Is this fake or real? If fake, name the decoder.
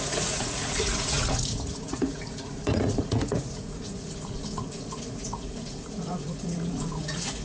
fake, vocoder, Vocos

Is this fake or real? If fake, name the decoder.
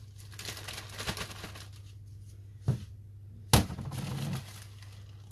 real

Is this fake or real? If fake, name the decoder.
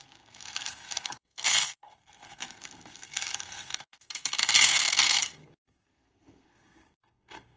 fake, codec, SNAC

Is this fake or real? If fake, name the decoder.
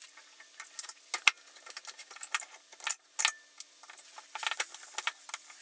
real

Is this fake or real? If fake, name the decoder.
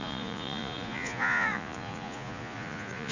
fake, vocoder, Vocos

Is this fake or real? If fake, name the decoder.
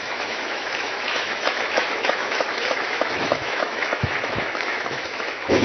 fake, autoencoder, DAC-VAE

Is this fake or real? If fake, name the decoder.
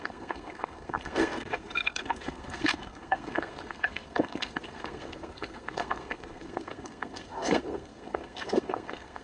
fake, codec, SNAC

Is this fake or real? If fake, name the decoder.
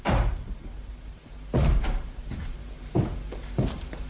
fake, vocoder, BigVGAN v2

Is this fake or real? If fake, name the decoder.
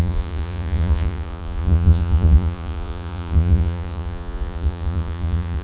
fake, vocoder, Vocos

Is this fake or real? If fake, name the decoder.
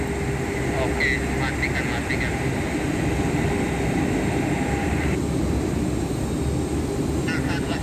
real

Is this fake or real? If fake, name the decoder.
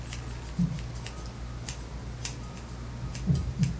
real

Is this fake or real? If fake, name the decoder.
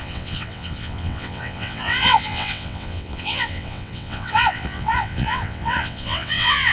fake, vocoder, WaveNeXt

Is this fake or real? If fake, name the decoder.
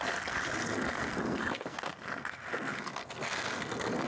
fake, codec, SNAC